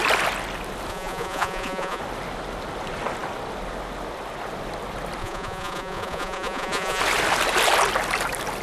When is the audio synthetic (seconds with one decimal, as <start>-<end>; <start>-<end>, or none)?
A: 0.9-2.0; 5.2-7.0

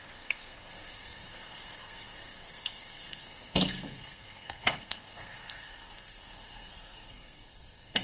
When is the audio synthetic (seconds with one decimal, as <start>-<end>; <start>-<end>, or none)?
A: 0.0-8.0

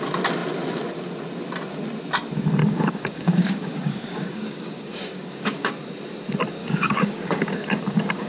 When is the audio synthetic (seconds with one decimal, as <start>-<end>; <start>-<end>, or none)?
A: 2.6-5.7; 6.6-8.3

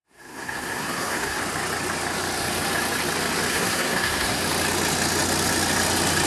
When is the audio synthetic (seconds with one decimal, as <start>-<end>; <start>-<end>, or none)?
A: 0.0-1.4; 3.5-4.4

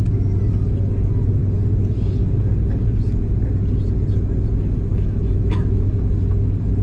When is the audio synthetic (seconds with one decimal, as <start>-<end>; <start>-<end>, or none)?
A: 4.9-6.1